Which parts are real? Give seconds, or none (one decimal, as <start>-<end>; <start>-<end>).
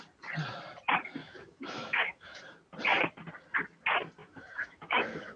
0.0-1.2; 2.4-4.2